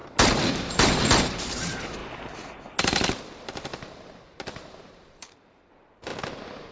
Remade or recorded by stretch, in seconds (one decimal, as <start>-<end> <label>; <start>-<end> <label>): 0.0-1.2 recorded; 1.2-2.0 remade; 2.0-4.8 recorded; 4.8-6.1 remade; 6.1-6.7 recorded